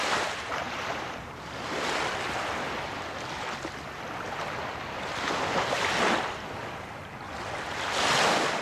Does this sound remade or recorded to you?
recorded